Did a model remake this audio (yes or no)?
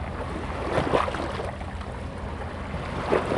no